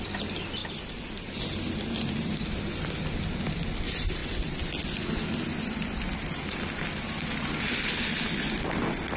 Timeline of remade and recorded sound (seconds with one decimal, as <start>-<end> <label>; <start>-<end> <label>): 0.0-9.2 recorded